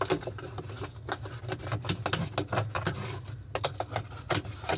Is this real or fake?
real